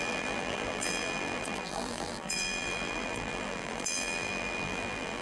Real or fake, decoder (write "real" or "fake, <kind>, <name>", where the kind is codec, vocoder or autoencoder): fake, vocoder, BigVGAN v2